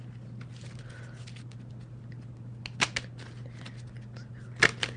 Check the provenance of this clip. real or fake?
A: real